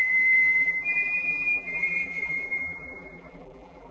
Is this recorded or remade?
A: remade